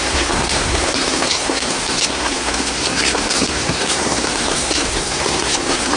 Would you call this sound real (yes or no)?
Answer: no